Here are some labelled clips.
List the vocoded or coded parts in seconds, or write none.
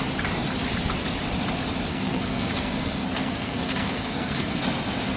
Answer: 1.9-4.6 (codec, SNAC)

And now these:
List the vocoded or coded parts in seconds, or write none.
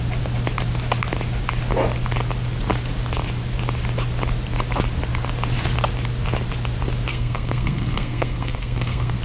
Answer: 7.1-9.2 (codec, SNAC)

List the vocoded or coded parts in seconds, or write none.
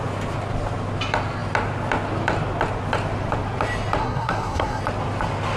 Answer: 4.0-4.8 (codec, SNAC)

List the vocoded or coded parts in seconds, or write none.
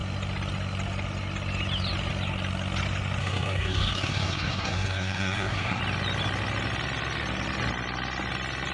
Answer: 3.2-5.8 (codec, SNAC)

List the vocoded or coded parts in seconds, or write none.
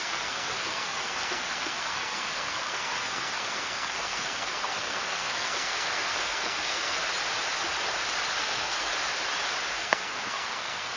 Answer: 0.0-7.0 (codec, SNAC); 8.4-8.9; 9.7-11.0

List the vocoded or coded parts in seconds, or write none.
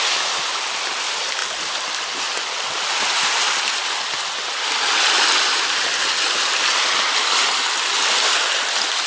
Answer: none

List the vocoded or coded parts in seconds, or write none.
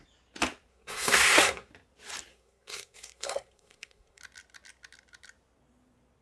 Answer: 0.7-1.7 (codec, SNAC); 2.3-4.2